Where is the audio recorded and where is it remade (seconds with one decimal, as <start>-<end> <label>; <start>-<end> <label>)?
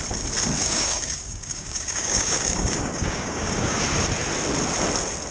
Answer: 0.0-0.6 recorded; 0.6-3.8 remade; 3.8-5.3 recorded